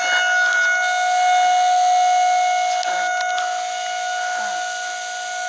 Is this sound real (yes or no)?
yes